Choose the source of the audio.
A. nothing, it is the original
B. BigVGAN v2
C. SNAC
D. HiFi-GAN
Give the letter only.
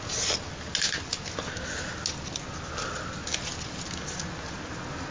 A